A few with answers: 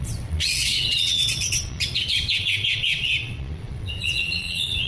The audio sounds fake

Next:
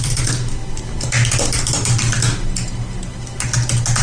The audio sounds real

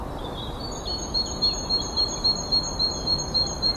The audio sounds real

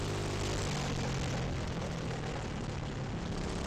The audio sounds real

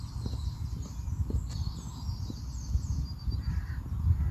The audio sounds real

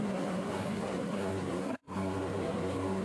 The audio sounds fake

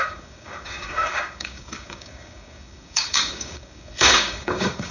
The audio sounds fake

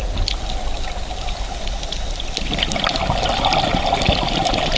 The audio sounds real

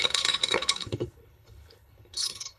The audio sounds fake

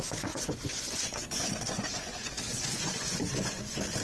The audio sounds fake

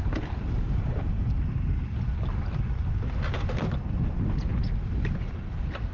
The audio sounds real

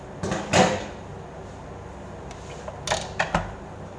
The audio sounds real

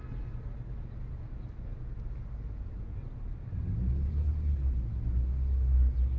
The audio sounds real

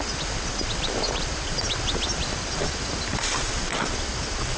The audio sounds real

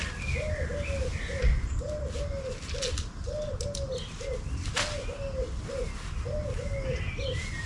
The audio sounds real